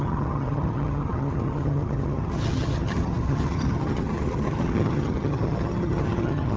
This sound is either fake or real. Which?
fake